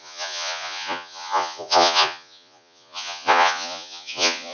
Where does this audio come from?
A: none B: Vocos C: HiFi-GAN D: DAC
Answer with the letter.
B